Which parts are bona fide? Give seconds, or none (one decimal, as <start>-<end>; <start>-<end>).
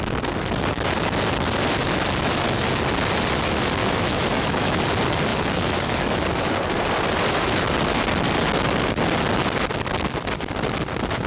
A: 0.0-3.8; 4.8-5.3; 6.2-11.3